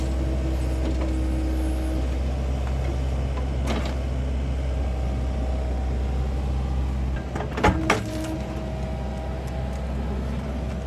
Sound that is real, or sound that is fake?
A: real